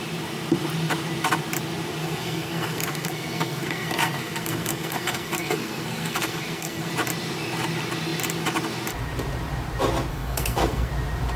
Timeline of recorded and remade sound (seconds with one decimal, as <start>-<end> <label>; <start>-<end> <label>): 0.0-2.0 recorded; 2.0-6.9 remade; 6.9-10.1 recorded; 10.1-10.9 remade; 10.9-11.4 recorded